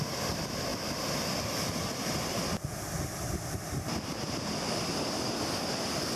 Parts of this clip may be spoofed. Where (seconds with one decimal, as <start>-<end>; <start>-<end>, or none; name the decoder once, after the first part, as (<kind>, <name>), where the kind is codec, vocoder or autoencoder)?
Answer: none

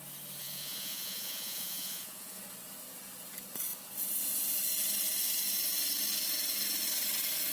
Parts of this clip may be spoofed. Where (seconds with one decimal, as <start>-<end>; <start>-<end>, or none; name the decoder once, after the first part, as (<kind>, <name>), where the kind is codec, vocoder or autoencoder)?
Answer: 0.4-2.4 (vocoder, Vocos)

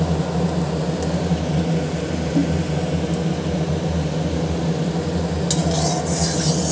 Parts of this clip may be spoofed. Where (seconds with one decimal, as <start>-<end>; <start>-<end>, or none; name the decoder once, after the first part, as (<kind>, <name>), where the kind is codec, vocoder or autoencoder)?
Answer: none

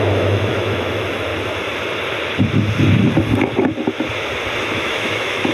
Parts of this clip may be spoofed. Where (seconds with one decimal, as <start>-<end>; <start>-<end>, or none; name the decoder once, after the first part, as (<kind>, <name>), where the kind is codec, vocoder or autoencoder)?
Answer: 0.0-1.3 (autoencoder, DAC-VAE); 4.6-5.5